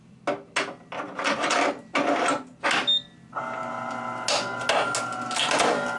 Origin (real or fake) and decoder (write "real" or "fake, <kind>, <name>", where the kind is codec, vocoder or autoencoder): real